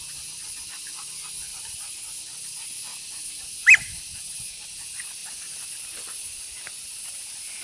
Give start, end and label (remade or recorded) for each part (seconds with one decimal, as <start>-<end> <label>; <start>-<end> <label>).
0.0-1.5 recorded; 1.5-2.0 remade; 2.0-7.6 recorded

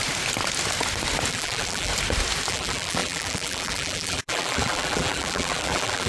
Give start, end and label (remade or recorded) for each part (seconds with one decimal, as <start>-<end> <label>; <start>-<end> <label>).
0.0-1.3 recorded; 1.3-1.9 remade; 1.9-2.5 recorded; 2.5-6.1 remade

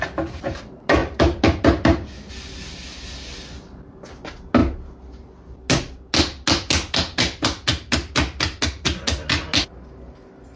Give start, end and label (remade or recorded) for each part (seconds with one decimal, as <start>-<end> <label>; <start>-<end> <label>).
0.0-10.6 recorded

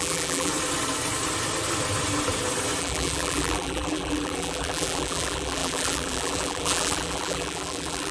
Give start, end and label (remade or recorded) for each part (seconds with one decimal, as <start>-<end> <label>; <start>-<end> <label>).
0.0-0.5 remade; 0.5-2.8 recorded; 2.8-8.1 remade

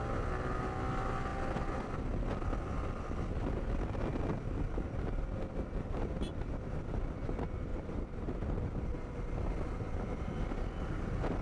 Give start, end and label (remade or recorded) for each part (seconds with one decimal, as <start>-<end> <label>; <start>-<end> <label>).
0.0-7.7 recorded; 7.7-8.4 remade; 8.4-11.4 recorded